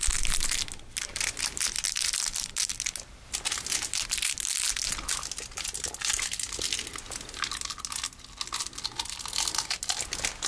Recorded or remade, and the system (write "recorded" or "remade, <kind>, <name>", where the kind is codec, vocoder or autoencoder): recorded